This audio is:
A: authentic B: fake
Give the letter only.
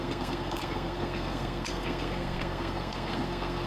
B